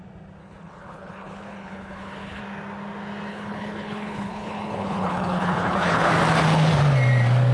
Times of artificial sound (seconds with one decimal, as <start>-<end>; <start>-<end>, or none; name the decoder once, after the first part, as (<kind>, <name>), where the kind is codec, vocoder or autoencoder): 0.4-2.4 (codec, HILCodec); 3.3-6.1